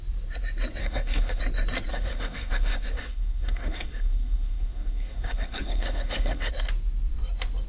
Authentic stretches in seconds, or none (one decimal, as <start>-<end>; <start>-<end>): 0.0-0.8; 1.4-1.9; 6.5-7.7